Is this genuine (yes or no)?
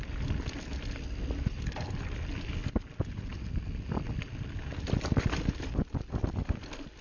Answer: yes